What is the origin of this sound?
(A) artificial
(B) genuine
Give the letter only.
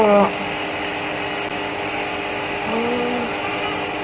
B